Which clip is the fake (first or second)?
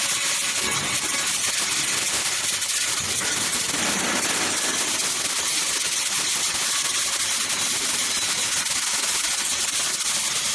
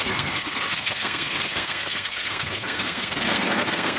second